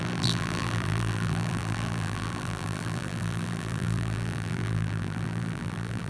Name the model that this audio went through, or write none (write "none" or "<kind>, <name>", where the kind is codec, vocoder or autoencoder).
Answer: vocoder, BigVGAN v2